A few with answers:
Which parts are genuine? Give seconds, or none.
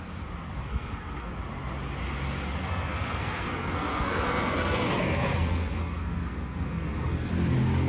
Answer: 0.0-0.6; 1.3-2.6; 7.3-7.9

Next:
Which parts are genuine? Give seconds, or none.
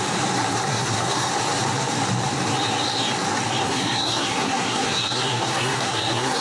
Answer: 0.0-0.7; 1.3-3.6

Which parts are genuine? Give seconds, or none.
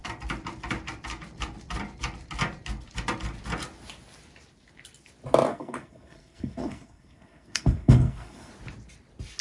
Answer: 0.0-5.5; 8.5-9.4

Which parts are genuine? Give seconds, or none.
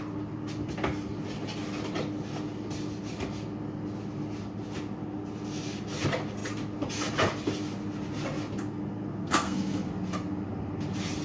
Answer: 0.0-9.2; 9.9-11.2